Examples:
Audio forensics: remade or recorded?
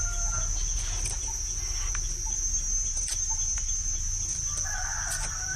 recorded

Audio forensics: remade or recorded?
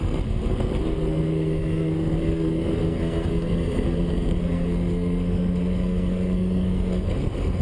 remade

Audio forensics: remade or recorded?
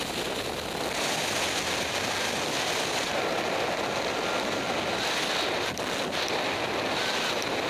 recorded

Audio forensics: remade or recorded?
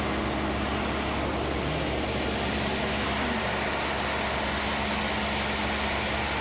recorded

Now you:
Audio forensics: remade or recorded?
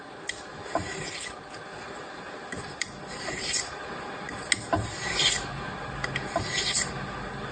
recorded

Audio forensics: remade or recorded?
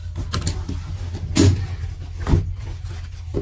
recorded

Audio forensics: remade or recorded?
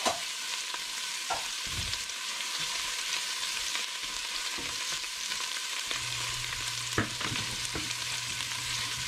remade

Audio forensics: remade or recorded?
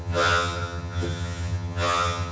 remade